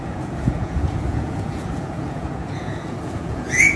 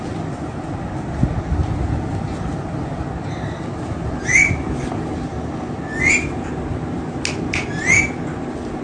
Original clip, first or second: second